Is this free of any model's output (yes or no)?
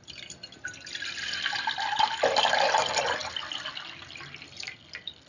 yes